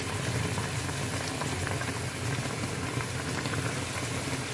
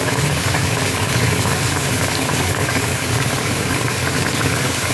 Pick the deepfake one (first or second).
second